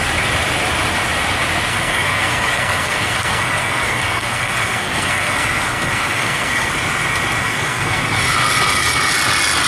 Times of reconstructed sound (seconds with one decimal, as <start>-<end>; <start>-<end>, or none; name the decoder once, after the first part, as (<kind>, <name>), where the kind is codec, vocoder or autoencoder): 1.7-6.7 (codec, SNAC); 7.4-8.0